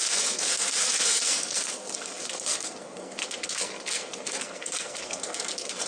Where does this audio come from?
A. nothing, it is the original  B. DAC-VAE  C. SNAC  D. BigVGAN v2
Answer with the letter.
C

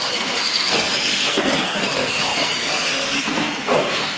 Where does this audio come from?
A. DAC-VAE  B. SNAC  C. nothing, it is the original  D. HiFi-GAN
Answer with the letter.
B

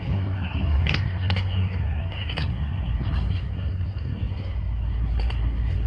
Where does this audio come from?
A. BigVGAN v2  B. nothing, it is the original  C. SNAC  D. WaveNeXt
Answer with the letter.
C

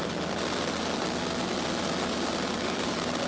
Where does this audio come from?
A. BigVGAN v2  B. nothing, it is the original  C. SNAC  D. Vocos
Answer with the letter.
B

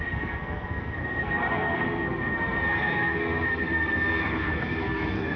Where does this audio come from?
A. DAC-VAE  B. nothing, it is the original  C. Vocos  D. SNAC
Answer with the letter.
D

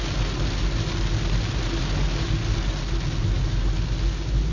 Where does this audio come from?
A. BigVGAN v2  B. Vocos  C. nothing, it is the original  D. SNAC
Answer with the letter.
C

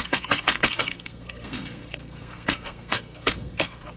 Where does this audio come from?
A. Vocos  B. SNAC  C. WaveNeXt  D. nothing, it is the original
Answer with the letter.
B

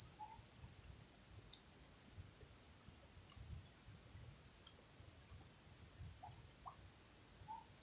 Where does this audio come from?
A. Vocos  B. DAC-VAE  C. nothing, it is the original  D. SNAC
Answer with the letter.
C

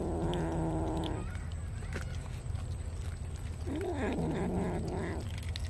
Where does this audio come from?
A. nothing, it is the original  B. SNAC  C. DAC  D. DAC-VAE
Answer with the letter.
A